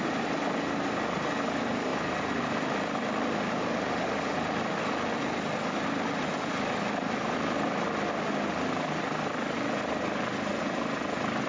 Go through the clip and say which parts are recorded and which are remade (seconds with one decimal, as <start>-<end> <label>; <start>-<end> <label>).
0.0-11.5 recorded